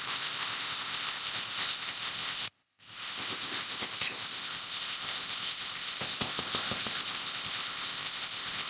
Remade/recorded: remade